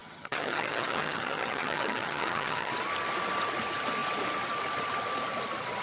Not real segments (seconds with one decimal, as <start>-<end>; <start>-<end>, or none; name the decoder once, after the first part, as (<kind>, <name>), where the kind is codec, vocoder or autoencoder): 0.0-2.7 (vocoder, HiFi-GAN)